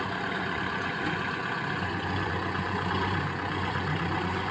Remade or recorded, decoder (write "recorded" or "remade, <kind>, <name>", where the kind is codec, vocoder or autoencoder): remade, vocoder, Vocos